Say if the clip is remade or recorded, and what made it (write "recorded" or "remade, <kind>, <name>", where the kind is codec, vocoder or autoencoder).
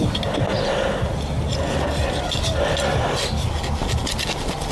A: recorded